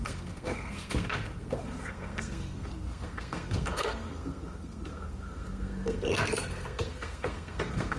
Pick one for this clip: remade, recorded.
remade